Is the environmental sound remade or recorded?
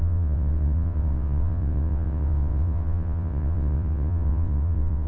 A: remade